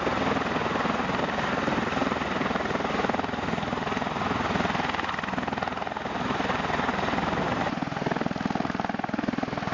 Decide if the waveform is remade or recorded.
recorded